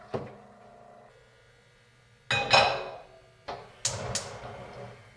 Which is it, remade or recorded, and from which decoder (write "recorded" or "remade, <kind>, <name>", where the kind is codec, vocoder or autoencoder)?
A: recorded